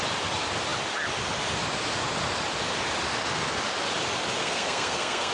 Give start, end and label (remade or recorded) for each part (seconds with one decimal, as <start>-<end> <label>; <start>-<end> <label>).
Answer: 0.0-4.4 recorded; 4.4-5.3 remade